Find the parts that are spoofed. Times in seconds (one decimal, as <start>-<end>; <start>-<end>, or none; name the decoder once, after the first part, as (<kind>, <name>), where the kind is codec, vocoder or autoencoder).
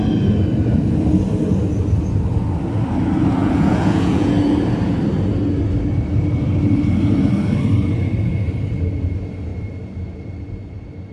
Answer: 3.4-4.3 (vocoder, Vocos)